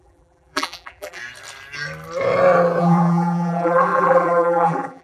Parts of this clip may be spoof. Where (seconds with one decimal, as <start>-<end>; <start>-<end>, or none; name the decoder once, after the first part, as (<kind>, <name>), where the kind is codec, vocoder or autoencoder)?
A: 0.0-1.2 (vocoder, BigVGAN v2); 2.8-5.0